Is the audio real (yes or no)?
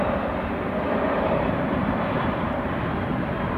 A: no